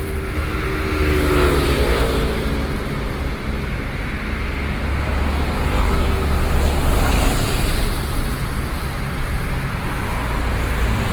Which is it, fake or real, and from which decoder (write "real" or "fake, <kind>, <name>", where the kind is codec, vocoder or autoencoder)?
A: real